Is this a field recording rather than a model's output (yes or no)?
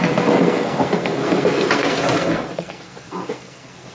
no